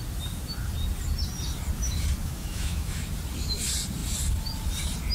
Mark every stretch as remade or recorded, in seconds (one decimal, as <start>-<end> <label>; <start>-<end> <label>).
0.0-2.2 recorded; 2.2-3.0 remade; 3.0-5.1 recorded